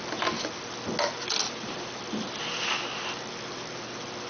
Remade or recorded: recorded